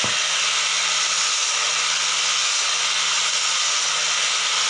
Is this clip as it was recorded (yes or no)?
yes